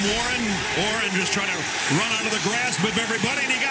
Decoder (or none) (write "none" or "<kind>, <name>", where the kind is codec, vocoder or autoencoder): none